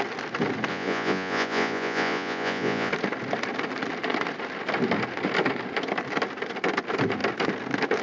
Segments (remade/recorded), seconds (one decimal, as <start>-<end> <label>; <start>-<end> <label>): 0.0-0.7 recorded; 0.7-2.9 remade; 2.9-8.0 recorded